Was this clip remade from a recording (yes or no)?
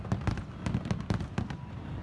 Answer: no